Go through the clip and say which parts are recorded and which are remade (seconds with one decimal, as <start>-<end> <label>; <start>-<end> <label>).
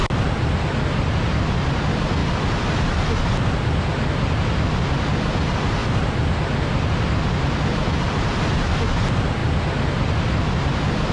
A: 0.0-11.1 recorded